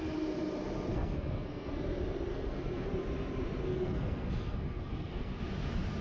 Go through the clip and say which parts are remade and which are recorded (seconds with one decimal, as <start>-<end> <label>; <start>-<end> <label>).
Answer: 0.0-0.9 recorded; 0.9-1.7 remade; 1.7-2.3 recorded; 2.3-2.9 remade; 2.9-3.6 recorded; 3.6-5.4 remade; 5.4-6.0 recorded